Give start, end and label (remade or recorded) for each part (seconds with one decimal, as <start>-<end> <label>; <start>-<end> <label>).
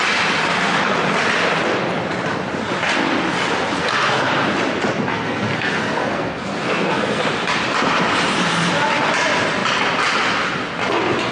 0.0-3.8 recorded; 3.8-4.3 remade; 4.3-5.1 recorded; 5.1-7.2 remade; 7.2-11.3 recorded